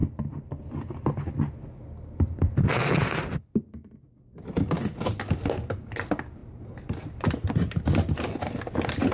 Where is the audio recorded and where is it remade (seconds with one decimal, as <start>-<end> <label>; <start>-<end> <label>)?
0.0-6.4 recorded; 6.4-7.8 remade; 7.8-9.1 recorded

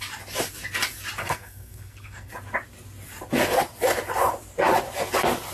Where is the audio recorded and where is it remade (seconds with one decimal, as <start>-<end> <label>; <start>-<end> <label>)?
0.0-1.2 recorded; 1.2-2.3 remade; 2.3-5.5 recorded